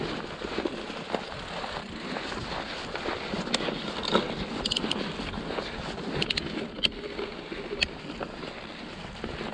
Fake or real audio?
real